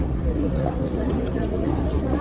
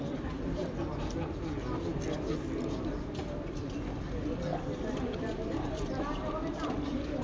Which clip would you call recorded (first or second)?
second